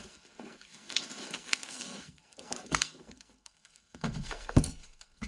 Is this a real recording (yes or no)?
no